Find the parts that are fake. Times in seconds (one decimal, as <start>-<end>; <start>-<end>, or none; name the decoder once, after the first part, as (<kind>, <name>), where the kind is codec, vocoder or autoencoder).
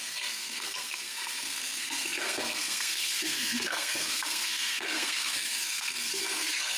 0.0-6.8 (codec, SNAC)